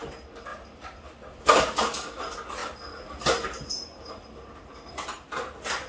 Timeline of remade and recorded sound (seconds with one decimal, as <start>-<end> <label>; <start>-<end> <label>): 0.0-0.5 recorded; 0.5-1.6 remade; 1.6-5.9 recorded